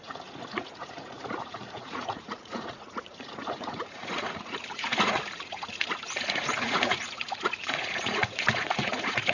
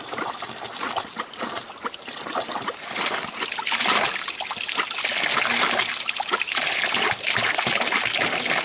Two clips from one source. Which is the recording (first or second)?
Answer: second